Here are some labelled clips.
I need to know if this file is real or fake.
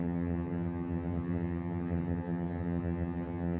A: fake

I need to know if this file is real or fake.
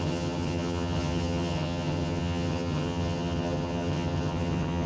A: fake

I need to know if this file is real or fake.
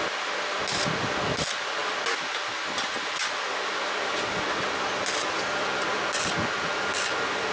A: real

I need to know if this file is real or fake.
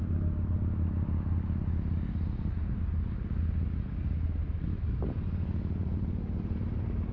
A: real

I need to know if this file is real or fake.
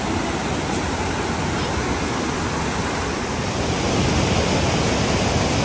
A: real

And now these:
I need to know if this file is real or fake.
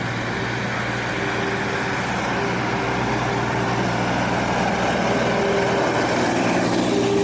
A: real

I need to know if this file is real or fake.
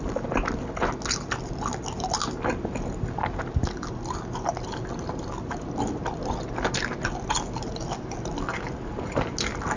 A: real